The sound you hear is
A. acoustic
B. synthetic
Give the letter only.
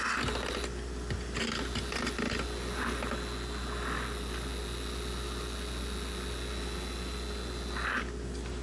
A